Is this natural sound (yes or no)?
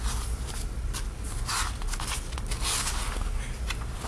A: yes